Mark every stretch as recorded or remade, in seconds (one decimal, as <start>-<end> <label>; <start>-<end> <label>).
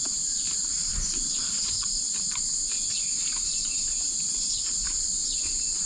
0.0-5.9 remade